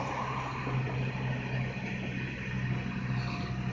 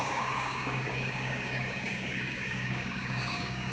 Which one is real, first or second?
first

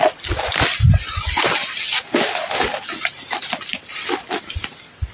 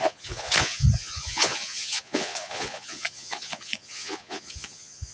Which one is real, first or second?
first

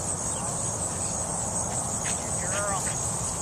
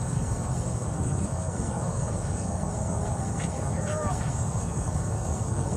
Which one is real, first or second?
first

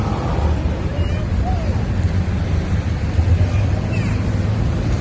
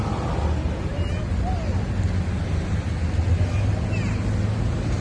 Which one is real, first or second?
second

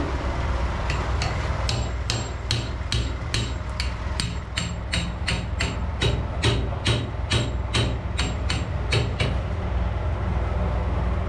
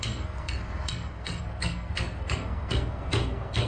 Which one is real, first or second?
first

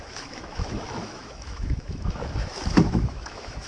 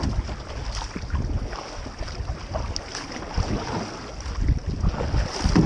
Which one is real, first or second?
second